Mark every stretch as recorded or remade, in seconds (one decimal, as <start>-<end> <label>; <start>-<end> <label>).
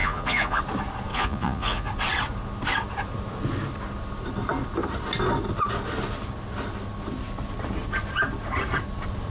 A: 0.0-0.6 remade; 0.6-1.1 recorded; 1.1-1.9 remade; 1.9-9.3 recorded